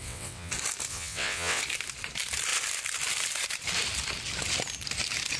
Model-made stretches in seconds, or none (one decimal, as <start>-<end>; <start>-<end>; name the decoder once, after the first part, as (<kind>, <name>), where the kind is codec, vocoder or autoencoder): 0.0-0.5 (vocoder, WaveNeXt); 0.9-1.6

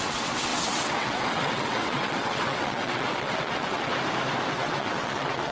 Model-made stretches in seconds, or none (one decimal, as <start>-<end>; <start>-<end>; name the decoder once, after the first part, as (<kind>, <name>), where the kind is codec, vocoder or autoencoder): 0.0-3.9 (vocoder, WaveNeXt); 4.5-5.5

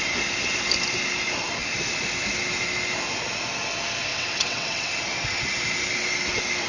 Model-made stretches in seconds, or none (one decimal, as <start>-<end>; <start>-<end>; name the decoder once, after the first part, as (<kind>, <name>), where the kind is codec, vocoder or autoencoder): 4.1-4.9 (vocoder, WaveNeXt)

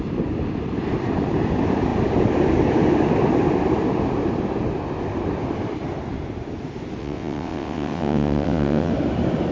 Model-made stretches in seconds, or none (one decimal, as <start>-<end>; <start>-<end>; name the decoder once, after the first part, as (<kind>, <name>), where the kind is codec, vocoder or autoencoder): 7.0-8.9 (vocoder, WaveNeXt)

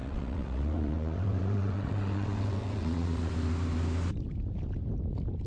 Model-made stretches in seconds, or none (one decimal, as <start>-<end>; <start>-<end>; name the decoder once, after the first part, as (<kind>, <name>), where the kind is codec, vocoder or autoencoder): 0.0-3.3 (vocoder, WaveNeXt)

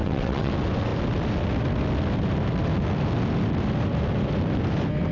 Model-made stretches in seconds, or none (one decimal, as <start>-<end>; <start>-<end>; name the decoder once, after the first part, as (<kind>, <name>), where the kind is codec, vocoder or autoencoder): 0.0-0.5 (vocoder, WaveNeXt)

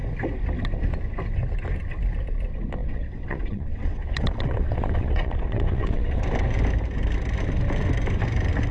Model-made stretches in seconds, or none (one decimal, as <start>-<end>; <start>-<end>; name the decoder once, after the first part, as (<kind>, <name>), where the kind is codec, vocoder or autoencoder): 2.8-6.2 (vocoder, WaveNeXt)